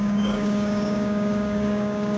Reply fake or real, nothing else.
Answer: fake